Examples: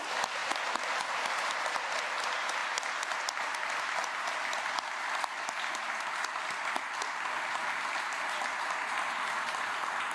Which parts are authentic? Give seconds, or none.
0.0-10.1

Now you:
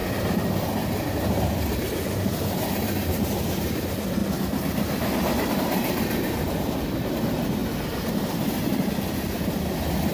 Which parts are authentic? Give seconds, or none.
0.0-1.1; 4.2-5.5; 7.6-10.1

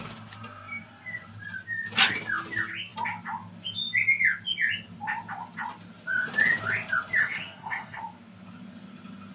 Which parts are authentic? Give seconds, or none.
0.0-7.2; 8.0-9.3

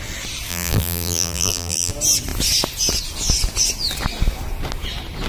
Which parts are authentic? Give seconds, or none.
0.0-0.5; 1.9-5.3

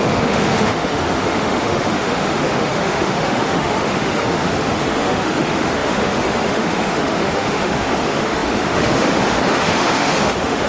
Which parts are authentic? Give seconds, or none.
none